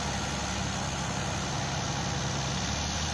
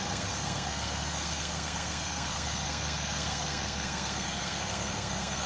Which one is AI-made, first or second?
second